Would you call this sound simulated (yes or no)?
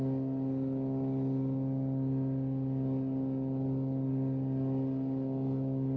no